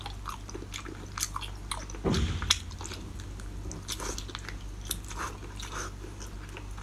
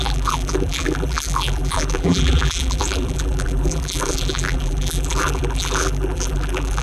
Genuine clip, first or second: first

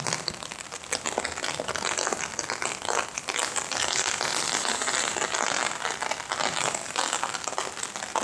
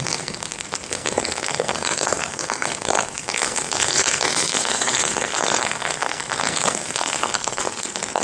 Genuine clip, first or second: first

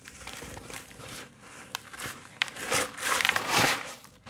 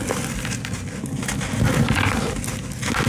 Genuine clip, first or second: second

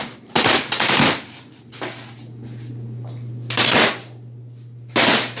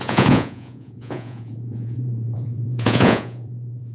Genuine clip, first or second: first